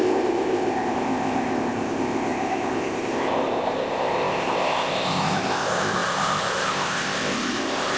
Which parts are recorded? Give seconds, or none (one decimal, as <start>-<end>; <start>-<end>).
none